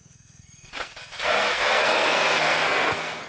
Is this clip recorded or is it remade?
remade